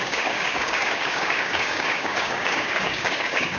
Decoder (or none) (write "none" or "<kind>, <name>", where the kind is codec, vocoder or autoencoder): codec, DAC